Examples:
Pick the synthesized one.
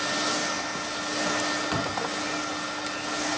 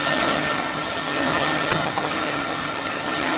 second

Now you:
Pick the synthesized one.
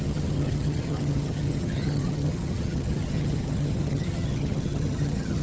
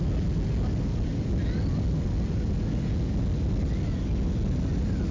first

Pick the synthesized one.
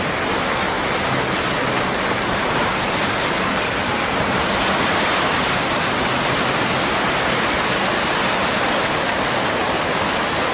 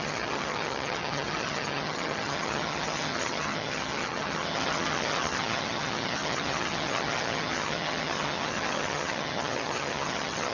second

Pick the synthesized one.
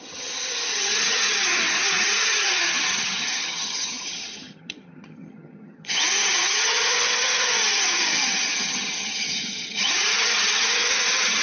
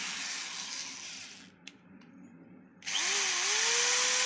first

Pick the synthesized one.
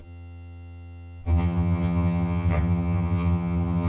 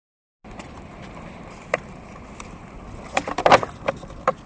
first